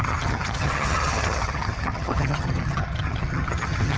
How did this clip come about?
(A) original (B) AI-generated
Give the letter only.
B